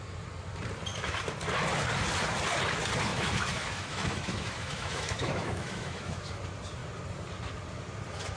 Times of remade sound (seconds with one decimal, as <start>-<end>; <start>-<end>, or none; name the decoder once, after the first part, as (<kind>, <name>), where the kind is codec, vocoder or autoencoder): 3.1-6.3 (autoencoder, DAC-VAE)